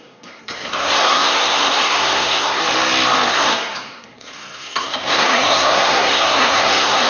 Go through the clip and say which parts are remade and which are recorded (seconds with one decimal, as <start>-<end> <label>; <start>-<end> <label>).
0.0-2.6 remade; 2.6-3.3 recorded; 3.3-7.1 remade